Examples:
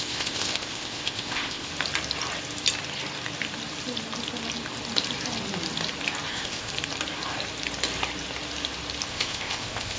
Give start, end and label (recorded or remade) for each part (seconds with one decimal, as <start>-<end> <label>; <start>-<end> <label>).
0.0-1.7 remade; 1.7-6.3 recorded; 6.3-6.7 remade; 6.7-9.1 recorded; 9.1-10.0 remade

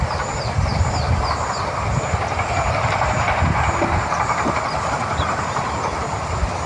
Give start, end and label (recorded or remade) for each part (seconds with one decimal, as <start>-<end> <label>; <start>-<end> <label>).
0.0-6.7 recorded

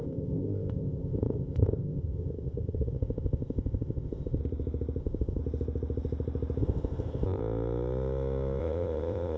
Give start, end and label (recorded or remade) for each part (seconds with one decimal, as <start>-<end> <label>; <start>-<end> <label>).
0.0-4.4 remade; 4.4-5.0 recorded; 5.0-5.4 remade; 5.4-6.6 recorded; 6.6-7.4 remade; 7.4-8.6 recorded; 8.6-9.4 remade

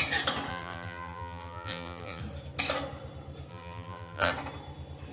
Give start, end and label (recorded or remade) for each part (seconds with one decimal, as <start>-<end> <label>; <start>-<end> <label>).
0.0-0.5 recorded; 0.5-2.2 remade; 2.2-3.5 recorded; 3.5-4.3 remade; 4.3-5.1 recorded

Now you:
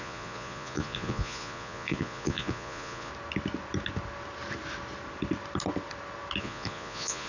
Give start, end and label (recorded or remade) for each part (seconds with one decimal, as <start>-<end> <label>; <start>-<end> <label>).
0.0-3.1 remade; 3.1-6.4 recorded; 6.4-7.3 remade

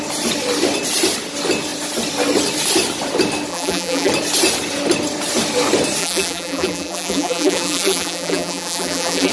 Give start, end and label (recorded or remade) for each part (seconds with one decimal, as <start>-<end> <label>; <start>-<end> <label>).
0.0-3.5 recorded; 3.5-4.1 remade; 4.1-6.0 recorded; 6.0-9.3 remade